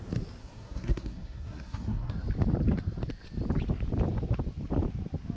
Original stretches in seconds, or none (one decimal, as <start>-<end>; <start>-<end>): 0.0-0.4; 2.1-5.4